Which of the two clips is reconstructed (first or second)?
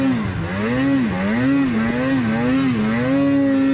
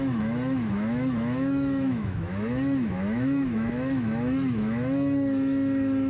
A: second